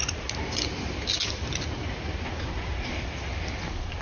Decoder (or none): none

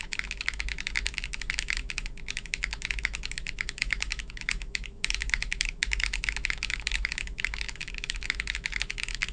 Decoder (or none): autoencoder, DAC-VAE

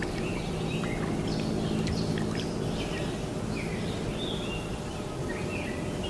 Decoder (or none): none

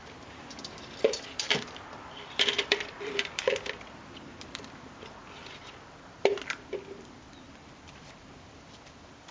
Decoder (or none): vocoder, BigVGAN v2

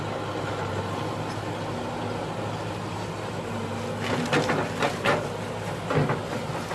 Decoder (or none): none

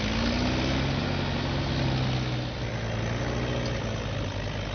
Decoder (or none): none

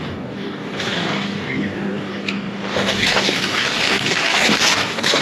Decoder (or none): codec, DAC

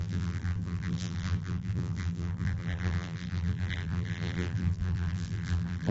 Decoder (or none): vocoder, BigVGAN v2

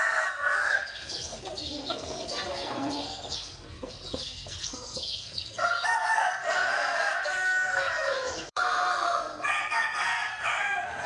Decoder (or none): codec, SNAC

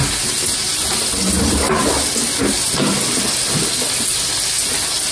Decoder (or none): none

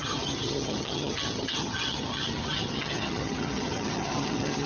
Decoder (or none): vocoder, HiFi-GAN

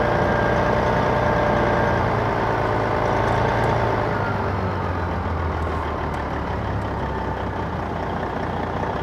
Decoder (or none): none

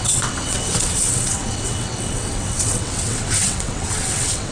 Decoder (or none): vocoder, WaveNeXt